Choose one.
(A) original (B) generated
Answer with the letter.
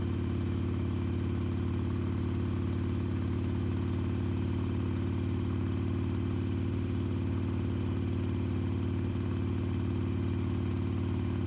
A